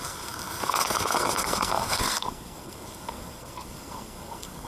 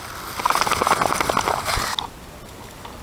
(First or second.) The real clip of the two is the second